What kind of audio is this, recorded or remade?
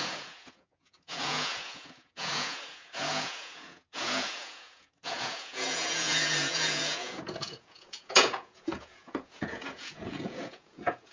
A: remade